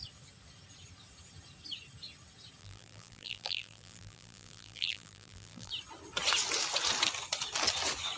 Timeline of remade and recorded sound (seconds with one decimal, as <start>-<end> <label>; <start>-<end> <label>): 0.0-2.6 recorded; 2.6-5.7 remade; 5.7-8.2 recorded